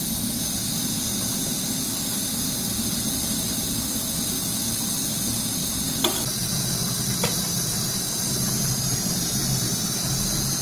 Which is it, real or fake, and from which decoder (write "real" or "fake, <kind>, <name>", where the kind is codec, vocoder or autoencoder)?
real